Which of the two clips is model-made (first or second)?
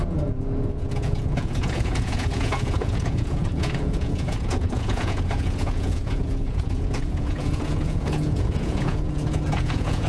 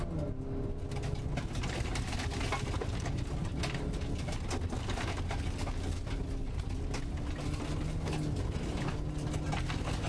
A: first